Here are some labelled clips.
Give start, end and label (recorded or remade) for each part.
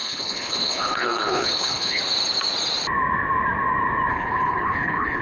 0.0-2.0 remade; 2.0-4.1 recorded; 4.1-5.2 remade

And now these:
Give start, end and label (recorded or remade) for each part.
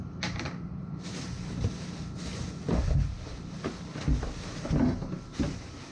0.0-1.2 remade; 1.2-5.9 recorded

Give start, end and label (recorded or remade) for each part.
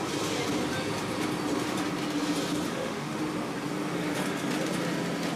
0.0-2.7 recorded; 2.7-3.2 remade; 3.2-5.4 recorded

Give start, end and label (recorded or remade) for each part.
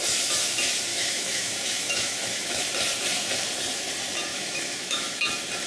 0.0-0.9 recorded; 0.9-2.7 remade; 2.7-4.3 recorded; 4.3-5.3 remade; 5.3-5.7 recorded